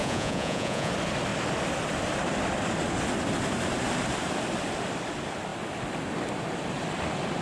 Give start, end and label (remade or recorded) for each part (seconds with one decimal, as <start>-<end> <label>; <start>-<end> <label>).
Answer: 0.0-0.9 remade; 0.9-7.4 recorded